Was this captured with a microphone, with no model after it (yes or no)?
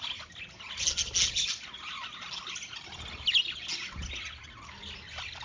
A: yes